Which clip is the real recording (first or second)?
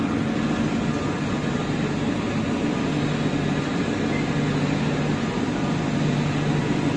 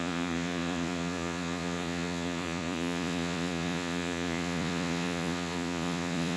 first